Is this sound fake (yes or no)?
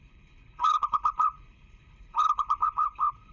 yes